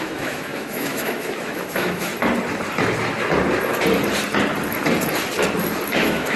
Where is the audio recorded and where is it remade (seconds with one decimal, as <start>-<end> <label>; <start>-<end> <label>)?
0.0-2.1 remade; 2.1-5.9 recorded; 5.9-6.4 remade